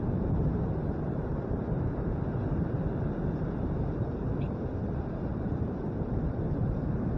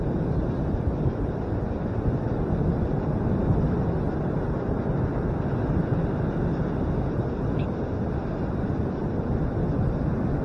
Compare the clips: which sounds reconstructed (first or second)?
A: first